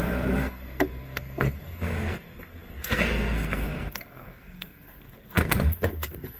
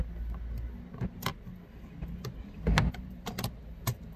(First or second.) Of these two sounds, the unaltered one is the second